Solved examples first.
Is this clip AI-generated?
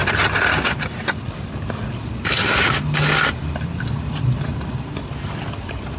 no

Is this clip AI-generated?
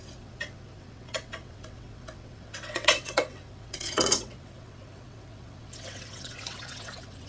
yes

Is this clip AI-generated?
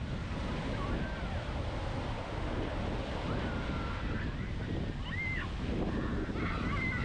no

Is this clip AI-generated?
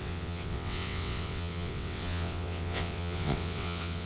yes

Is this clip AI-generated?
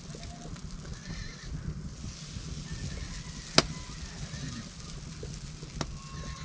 no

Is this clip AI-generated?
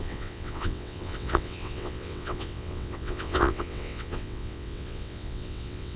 yes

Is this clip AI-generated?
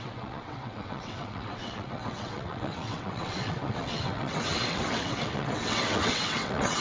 yes